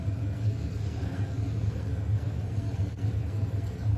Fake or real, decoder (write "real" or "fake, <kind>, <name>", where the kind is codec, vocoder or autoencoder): fake, codec, SNAC